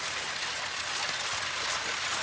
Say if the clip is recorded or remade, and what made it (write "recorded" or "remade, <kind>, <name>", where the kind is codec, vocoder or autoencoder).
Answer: recorded